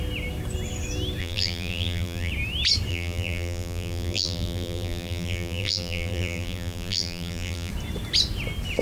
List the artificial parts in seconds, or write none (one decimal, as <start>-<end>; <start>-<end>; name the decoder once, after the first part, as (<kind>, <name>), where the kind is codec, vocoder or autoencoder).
1.2-2.3 (vocoder, BigVGAN v2); 2.9-7.7